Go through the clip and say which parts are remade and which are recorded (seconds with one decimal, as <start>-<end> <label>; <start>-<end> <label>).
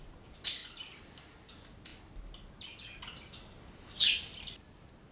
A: 0.0-5.1 recorded